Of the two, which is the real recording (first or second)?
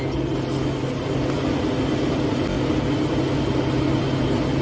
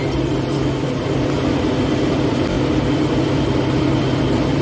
first